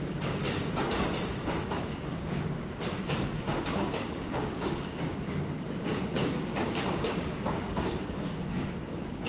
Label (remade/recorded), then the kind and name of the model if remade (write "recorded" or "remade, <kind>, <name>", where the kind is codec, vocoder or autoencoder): remade, codec, DAC